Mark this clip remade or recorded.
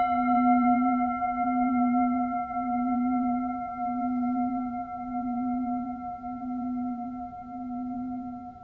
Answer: remade